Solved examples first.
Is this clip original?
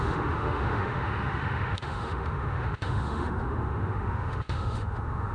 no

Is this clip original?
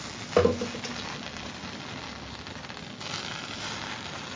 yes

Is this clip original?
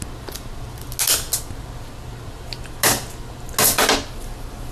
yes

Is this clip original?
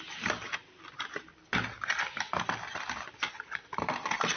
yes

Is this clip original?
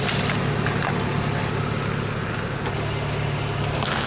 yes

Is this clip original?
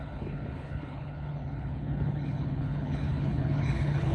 no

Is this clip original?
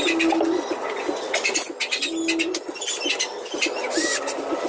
yes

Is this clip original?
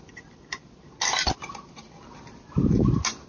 yes